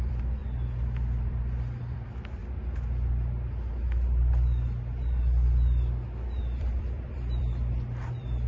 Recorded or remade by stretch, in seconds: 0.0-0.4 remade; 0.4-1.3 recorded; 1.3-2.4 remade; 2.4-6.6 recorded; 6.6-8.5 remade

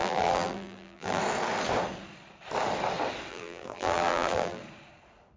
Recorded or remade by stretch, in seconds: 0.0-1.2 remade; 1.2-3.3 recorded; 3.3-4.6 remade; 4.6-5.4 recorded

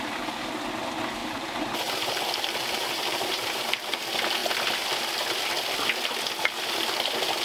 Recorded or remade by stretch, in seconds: 0.0-1.2 recorded; 1.2-4.0 remade; 4.0-7.4 recorded